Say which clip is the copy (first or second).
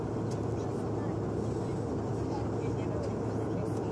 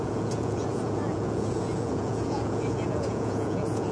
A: second